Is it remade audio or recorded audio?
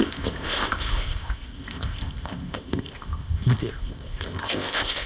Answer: remade